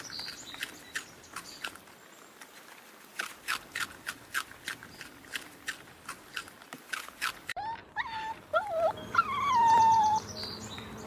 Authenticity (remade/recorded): remade